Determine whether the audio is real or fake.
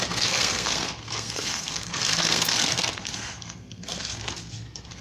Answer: fake